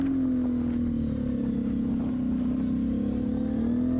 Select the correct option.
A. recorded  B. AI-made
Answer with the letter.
A